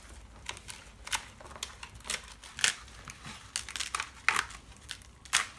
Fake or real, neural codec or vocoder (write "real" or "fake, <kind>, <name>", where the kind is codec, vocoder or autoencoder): real